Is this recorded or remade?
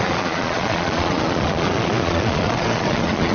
remade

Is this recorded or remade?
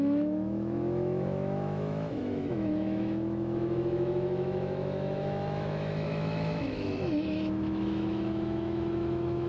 remade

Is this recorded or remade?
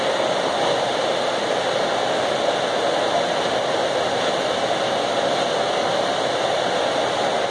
recorded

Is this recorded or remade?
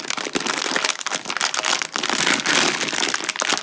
recorded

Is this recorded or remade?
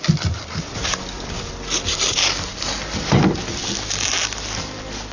recorded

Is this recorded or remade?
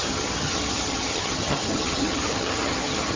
remade